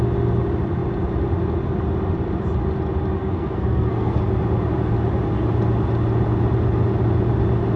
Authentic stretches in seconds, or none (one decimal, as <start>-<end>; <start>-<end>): 0.0-3.2; 4.2-7.8